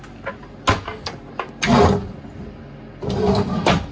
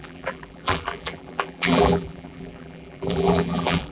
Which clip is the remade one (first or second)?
second